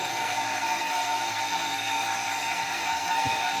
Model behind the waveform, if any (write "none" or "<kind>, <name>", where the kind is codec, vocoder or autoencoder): codec, SNAC